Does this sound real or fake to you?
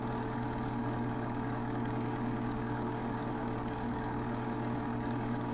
fake